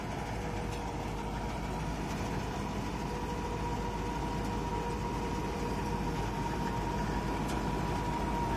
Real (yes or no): yes